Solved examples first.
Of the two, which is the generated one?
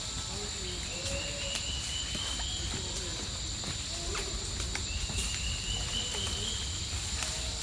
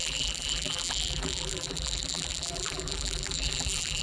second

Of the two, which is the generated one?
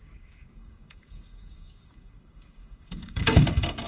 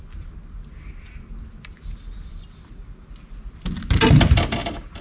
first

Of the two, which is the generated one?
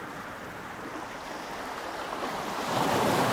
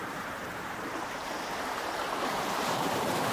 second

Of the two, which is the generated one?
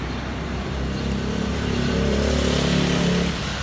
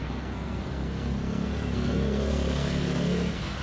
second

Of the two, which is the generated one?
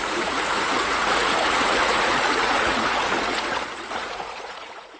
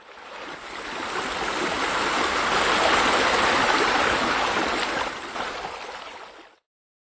first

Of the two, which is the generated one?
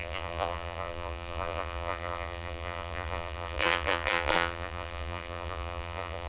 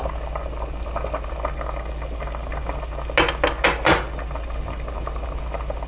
first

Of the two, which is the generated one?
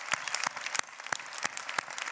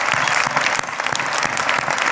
first